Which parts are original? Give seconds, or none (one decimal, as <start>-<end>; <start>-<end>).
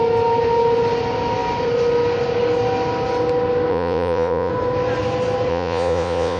0.0-3.7; 4.5-5.5